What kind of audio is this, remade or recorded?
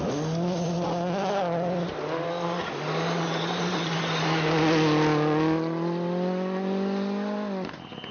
recorded